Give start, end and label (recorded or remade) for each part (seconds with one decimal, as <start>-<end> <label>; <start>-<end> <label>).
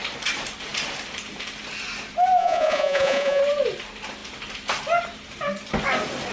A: 0.0-2.4 recorded; 2.4-3.4 remade; 3.4-6.3 recorded